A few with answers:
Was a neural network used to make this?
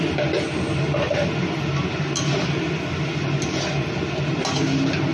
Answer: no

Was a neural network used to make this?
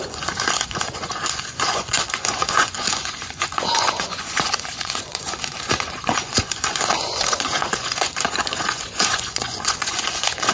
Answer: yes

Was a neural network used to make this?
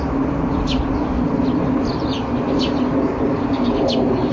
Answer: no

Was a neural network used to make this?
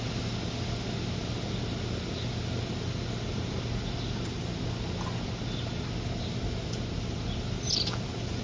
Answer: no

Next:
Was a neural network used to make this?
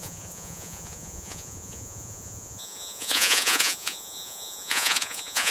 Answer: yes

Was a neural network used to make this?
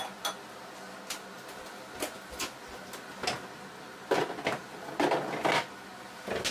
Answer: no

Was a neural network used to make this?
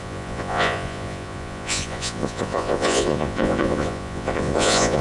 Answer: yes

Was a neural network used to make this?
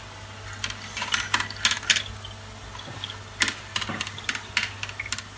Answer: no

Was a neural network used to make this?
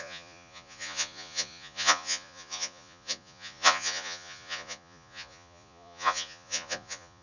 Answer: yes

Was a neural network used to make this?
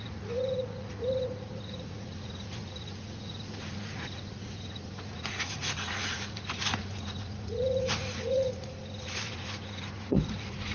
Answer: yes